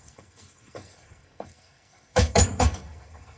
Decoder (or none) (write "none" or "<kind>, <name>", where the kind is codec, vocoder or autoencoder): codec, SNAC